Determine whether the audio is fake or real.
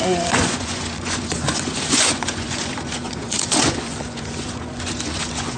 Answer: fake